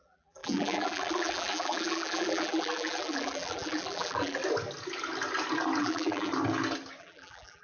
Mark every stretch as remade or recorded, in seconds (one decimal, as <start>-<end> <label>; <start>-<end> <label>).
0.0-4.4 remade; 4.4-5.8 recorded; 5.8-6.3 remade; 6.3-7.0 recorded; 7.0-7.6 remade